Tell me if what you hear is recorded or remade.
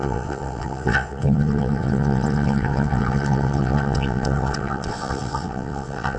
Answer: remade